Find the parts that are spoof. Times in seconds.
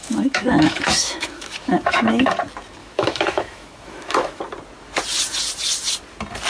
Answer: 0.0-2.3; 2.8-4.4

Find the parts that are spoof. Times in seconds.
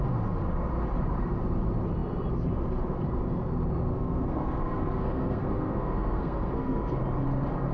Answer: 3.9-7.0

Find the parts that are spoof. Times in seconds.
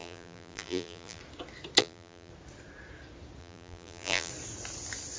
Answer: 0.0-1.2; 1.8-2.3; 3.4-4.3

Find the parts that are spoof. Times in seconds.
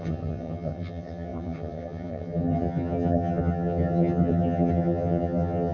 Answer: 0.0-5.7